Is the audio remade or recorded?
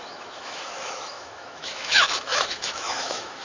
remade